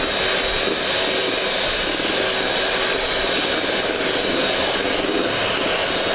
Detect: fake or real real